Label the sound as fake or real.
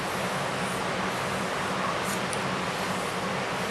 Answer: real